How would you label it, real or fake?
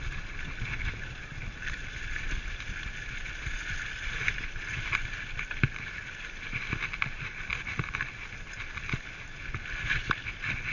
real